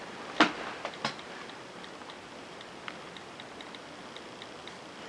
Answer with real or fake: real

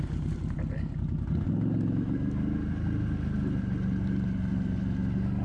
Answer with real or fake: real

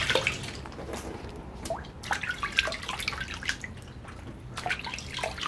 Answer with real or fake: real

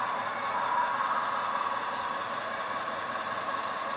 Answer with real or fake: fake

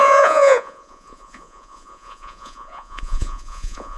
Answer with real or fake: fake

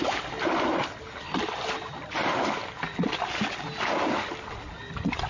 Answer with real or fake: real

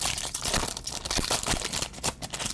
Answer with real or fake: real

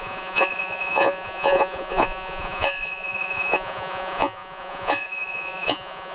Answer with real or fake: fake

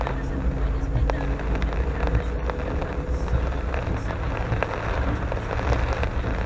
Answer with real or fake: real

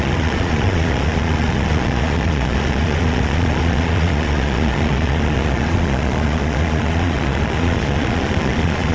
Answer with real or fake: fake